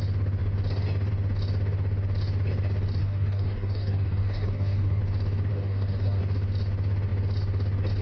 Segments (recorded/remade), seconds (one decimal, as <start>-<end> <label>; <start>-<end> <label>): 0.0-3.0 recorded; 3.0-5.0 remade; 5.0-5.5 recorded; 5.5-6.2 remade; 6.2-8.0 recorded